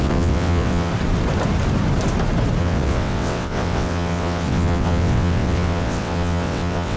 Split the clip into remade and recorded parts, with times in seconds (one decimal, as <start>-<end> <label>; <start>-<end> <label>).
0.0-0.9 remade; 0.9-2.6 recorded; 2.6-7.0 remade